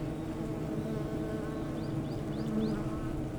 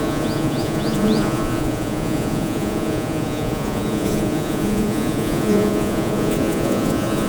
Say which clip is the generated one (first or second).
second